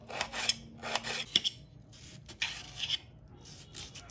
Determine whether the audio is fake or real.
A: real